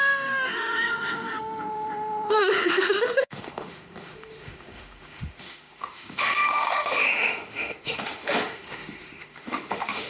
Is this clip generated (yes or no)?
yes